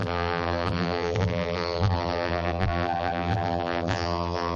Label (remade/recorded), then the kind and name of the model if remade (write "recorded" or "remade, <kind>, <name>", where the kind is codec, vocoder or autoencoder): remade, vocoder, BigVGAN v2